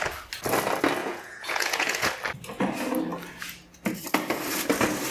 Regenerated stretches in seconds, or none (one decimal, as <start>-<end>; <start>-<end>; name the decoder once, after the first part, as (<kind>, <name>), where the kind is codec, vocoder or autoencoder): 1.0-2.1 (vocoder, Vocos)